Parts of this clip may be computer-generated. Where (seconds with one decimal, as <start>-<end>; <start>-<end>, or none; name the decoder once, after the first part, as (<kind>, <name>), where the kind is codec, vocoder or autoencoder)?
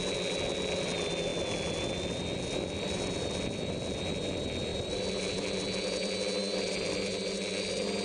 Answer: none